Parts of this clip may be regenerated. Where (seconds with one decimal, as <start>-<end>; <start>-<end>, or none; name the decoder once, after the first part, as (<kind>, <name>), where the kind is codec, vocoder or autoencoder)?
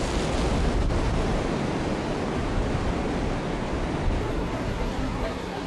4.2-5.7 (codec, SNAC)